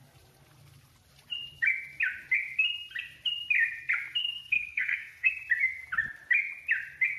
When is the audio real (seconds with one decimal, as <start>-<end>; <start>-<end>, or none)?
0.0-4.2; 5.3-7.2